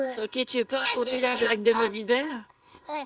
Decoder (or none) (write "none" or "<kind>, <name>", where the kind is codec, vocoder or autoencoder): codec, ZipCodec